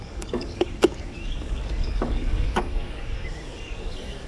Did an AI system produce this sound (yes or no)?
yes